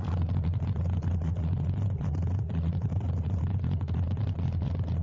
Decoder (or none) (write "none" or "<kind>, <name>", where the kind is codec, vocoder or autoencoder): vocoder, Vocos